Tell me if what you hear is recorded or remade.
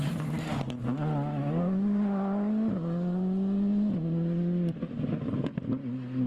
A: recorded